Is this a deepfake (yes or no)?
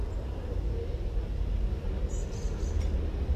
no